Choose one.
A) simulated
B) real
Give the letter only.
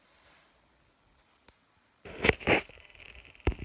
B